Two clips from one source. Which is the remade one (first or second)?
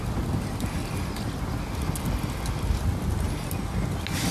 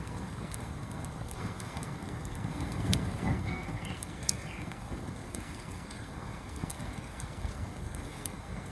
second